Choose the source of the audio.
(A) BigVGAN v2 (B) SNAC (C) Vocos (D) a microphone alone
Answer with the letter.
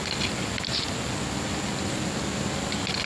D